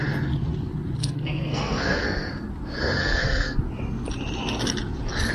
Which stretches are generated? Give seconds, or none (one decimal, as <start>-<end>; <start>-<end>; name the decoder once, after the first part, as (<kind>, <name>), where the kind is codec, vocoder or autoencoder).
1.0-2.3 (codec, SNAC); 3.0-3.6